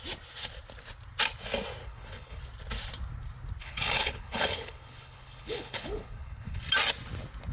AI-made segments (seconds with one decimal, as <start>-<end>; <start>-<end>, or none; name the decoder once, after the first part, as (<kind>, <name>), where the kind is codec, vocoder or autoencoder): 1.8-2.4 (codec, HILCodec); 3.6-6.6